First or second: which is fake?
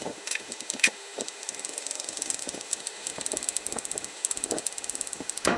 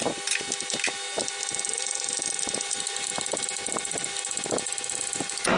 first